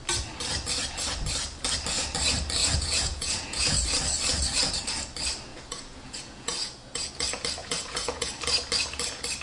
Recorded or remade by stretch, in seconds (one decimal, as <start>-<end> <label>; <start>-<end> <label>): 0.0-2.6 recorded; 2.6-3.8 remade; 3.8-5.5 recorded; 5.5-7.1 remade; 7.1-7.6 recorded; 7.6-8.3 remade; 8.3-9.4 recorded